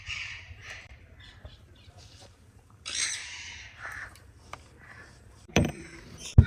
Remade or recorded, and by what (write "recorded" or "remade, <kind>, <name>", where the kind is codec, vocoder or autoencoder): remade, vocoder, BigVGAN v2